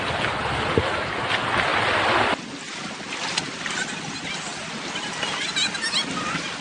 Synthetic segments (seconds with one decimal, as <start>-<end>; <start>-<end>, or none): none